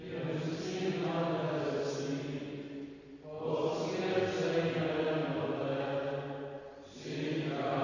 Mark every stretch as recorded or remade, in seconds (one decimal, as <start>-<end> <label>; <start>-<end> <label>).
0.0-7.8 recorded